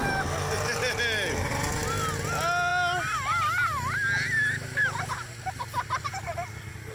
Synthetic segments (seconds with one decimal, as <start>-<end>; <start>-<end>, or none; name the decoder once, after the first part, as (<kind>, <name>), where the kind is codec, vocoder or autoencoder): none